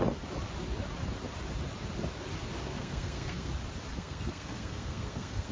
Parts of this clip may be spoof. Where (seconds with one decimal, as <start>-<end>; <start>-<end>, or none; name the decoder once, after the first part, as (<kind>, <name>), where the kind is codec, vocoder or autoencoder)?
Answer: 2.7-3.5 (codec, SNAC); 3.9-5.5